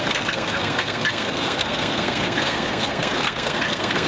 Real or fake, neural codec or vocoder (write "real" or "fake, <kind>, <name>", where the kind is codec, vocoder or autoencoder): fake, codec, SNAC